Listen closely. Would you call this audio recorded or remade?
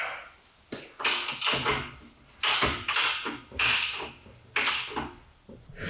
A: recorded